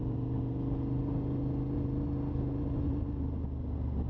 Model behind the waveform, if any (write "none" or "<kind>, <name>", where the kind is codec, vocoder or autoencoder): none